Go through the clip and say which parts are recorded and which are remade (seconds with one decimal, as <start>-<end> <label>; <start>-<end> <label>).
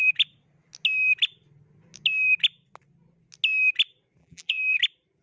0.0-4.2 recorded; 4.2-4.8 remade; 4.8-5.2 recorded